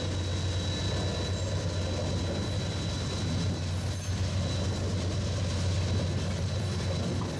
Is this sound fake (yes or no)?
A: no